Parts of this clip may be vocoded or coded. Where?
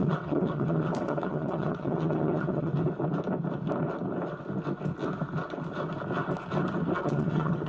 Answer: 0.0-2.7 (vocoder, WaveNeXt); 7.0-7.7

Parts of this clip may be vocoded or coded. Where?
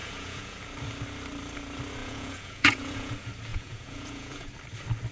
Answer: 0.0-0.6 (vocoder, Vocos); 2.0-3.1; 3.5-4.5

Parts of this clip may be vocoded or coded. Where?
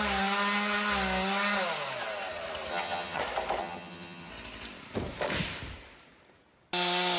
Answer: 2.7-3.2 (vocoder, HiFi-GAN); 3.6-4.3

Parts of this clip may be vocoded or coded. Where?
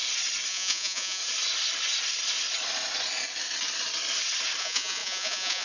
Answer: 0.5-1.2 (vocoder, Vocos); 4.6-5.6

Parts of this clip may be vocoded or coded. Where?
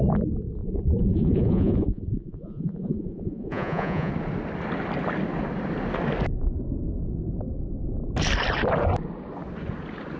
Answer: 0.6-4.1 (vocoder, Vocos)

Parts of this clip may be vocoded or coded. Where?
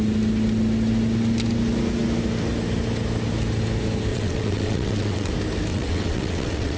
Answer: 4.1-5.3 (vocoder, WaveNeXt); 5.7-6.8